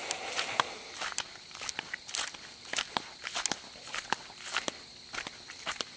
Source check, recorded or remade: recorded